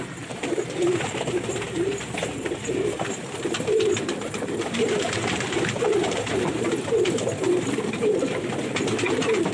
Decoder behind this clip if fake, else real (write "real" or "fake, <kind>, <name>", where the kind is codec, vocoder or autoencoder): fake, vocoder, BigVGAN v2